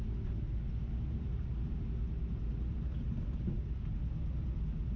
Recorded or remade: recorded